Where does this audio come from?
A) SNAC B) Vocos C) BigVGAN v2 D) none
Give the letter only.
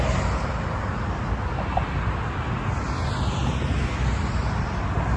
D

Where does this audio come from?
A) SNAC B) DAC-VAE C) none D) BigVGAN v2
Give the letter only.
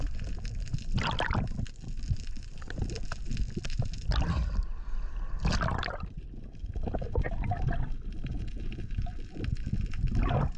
C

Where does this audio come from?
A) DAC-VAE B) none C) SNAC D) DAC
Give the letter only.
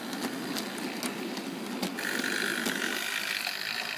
B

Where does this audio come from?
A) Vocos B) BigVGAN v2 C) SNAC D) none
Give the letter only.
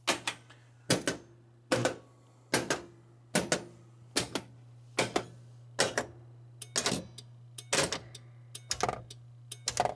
D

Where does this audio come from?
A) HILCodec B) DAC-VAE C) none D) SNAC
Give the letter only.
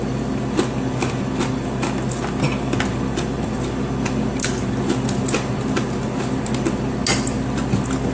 C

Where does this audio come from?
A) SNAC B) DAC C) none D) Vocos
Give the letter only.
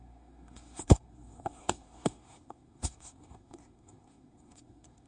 A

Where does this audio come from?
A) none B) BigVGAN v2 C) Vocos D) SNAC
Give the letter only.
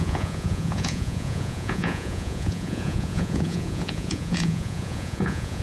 C